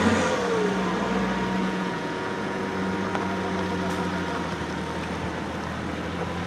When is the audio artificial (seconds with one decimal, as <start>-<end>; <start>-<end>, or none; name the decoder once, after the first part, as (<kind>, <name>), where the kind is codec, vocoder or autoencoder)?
1.6-2.6 (vocoder, Vocos)